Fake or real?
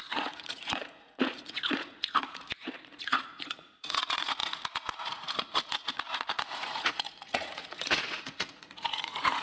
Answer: fake